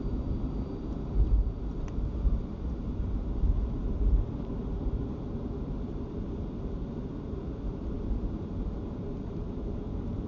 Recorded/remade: remade